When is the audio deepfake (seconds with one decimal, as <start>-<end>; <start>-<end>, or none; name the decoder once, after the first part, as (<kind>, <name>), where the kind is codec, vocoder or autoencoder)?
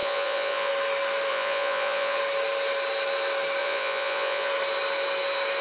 0.0-0.7 (vocoder, Vocos); 1.3-2.2; 3.6-4.5